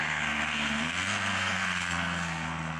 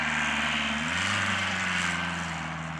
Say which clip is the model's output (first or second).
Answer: first